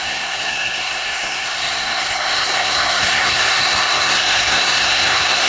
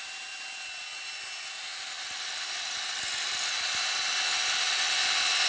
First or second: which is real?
second